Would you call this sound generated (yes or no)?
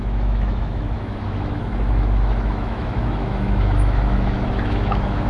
yes